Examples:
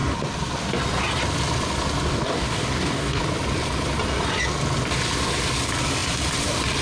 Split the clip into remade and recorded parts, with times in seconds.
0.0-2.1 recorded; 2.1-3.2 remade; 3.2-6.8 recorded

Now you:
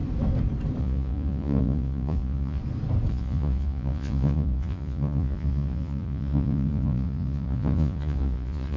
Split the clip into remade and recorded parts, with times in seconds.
0.0-0.8 recorded; 0.8-2.6 remade; 2.6-3.1 recorded; 3.1-8.8 remade

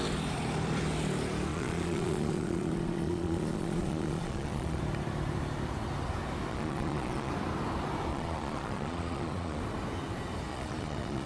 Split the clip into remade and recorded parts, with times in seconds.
0.0-1.5 recorded; 1.5-4.8 remade; 4.8-6.5 recorded; 6.5-7.3 remade; 7.3-8.1 recorded; 8.1-9.6 remade; 9.6-10.5 recorded; 10.5-11.3 remade